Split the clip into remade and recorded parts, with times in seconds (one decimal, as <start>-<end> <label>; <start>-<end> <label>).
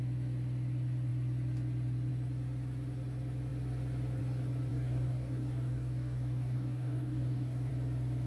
0.0-4.7 recorded; 4.7-7.7 remade; 7.7-8.3 recorded